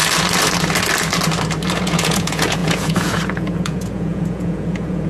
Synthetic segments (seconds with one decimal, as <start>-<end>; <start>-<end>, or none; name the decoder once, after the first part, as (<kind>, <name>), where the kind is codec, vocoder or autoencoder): 1.8-5.1 (vocoder, Vocos)